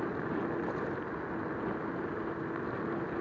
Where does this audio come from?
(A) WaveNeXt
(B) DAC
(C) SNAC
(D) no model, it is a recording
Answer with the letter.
D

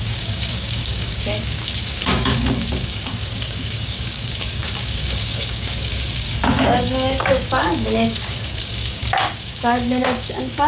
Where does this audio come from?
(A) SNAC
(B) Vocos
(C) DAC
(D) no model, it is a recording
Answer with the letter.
C